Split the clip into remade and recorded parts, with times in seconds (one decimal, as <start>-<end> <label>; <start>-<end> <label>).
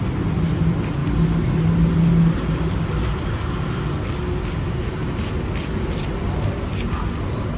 0.0-7.6 recorded